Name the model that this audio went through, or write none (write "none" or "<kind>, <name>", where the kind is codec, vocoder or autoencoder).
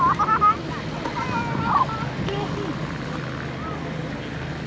none